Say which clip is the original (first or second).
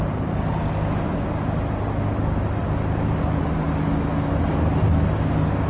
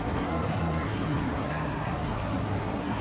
first